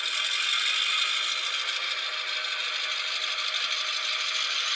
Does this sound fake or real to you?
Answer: real